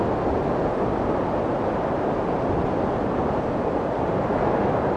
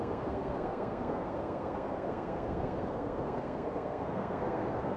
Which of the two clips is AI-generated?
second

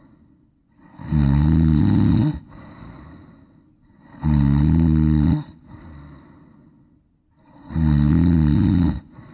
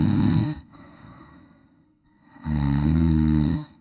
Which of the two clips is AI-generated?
second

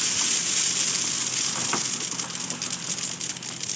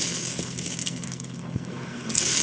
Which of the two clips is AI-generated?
second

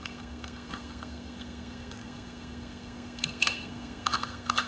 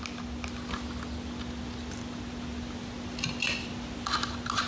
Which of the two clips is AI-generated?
first